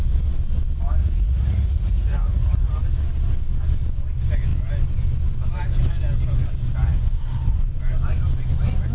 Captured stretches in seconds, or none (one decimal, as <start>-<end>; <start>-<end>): 0.0-1.0; 2.8-8.9